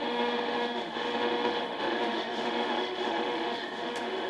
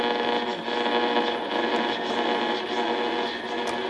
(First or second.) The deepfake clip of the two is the first